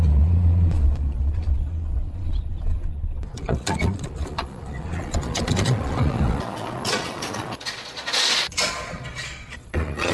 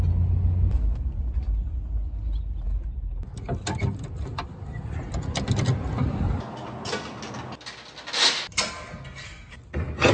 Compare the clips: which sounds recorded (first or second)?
second